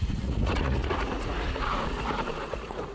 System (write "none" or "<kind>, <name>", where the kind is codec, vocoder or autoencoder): vocoder, Vocos